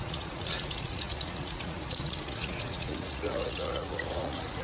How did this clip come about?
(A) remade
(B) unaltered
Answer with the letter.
A